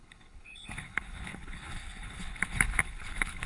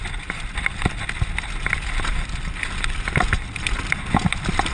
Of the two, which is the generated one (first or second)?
first